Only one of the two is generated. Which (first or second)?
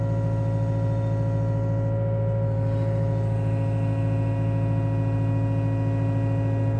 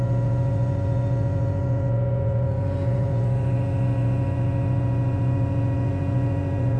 second